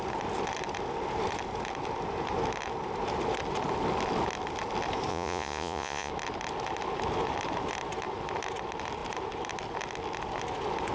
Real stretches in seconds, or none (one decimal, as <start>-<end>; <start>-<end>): 0.0-5.1; 6.1-10.9